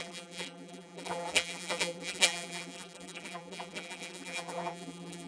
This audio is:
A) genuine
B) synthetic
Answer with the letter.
B